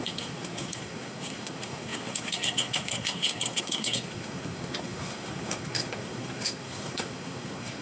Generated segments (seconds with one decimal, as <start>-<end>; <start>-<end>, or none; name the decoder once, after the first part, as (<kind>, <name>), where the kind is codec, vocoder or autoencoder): 0.0-7.8 (codec, SNAC)